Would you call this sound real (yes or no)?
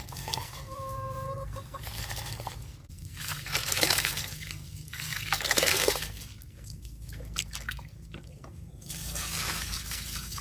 no